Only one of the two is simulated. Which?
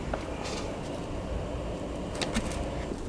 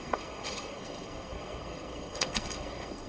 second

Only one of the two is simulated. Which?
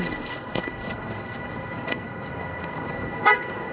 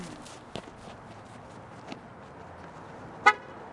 first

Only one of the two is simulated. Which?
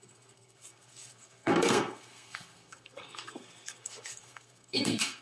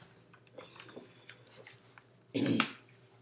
first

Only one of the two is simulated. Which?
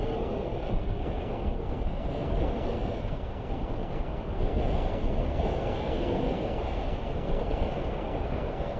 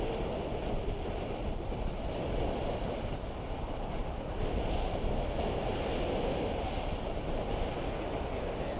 first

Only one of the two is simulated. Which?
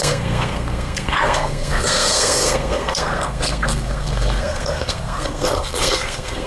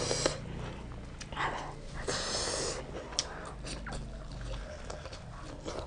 first